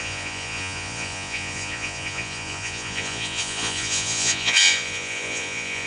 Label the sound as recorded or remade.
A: remade